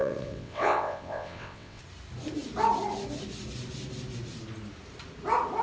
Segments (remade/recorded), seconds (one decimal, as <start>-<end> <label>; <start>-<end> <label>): 0.0-1.8 remade; 1.8-5.6 recorded

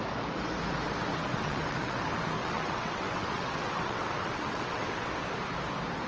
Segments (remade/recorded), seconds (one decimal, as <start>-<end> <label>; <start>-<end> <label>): 0.0-1.1 recorded; 1.1-2.0 remade; 2.0-2.4 recorded; 2.4-5.1 remade; 5.1-6.1 recorded

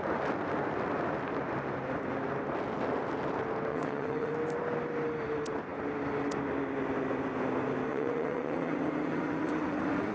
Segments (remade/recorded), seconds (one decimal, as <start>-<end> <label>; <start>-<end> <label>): 0.0-3.7 recorded; 3.7-4.3 remade; 4.3-7.9 recorded; 7.9-10.1 remade

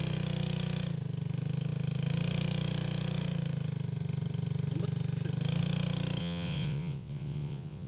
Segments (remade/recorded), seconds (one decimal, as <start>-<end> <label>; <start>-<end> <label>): 0.0-6.2 recorded; 6.2-7.9 remade

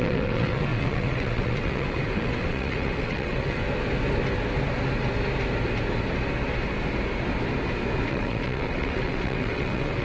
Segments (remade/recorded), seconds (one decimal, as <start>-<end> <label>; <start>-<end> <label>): 0.0-3.6 remade; 3.6-8.1 recorded; 8.1-10.0 remade

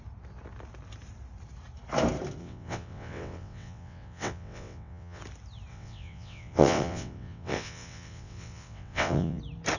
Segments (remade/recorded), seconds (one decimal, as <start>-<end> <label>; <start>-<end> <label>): 0.0-2.4 recorded; 2.4-5.2 remade; 5.2-5.7 recorded; 5.7-9.4 remade; 9.4-9.8 recorded

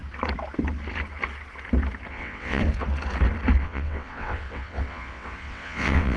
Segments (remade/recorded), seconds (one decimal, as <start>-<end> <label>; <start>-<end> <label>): 0.0-2.1 recorded; 2.1-2.6 remade; 2.6-3.6 recorded; 3.6-6.2 remade

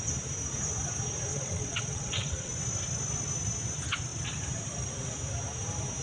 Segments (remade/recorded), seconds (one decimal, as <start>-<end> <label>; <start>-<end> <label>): 0.0-1.3 recorded; 1.3-2.5 remade; 2.5-6.0 recorded